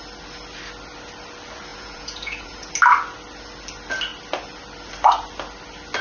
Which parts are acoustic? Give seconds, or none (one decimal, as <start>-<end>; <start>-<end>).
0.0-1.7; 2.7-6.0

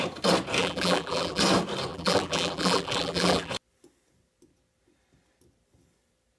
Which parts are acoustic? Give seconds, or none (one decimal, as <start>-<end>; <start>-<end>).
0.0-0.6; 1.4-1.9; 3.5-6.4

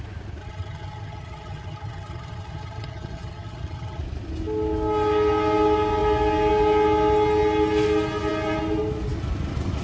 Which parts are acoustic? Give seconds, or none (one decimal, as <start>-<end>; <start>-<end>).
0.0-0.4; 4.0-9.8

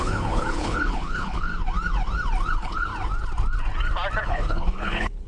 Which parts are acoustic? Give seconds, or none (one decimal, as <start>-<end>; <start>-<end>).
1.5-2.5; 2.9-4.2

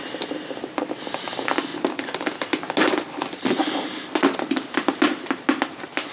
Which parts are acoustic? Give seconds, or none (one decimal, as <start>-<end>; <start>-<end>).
0.0-6.1